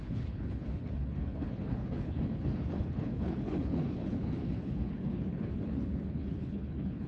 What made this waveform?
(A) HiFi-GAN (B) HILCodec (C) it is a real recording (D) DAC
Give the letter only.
B